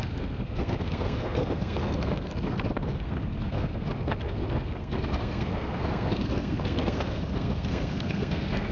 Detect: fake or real fake